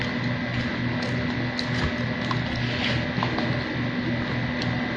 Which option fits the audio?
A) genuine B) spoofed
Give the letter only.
A